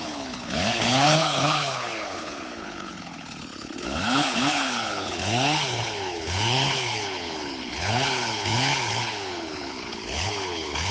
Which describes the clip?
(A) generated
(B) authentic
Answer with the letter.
A